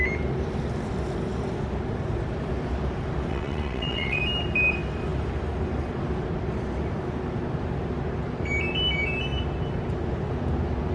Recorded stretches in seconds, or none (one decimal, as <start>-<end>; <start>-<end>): 0.0-3.3; 4.2-10.9